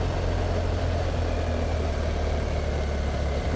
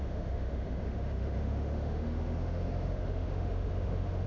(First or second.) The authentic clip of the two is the first